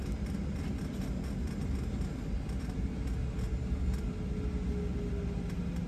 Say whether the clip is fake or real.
real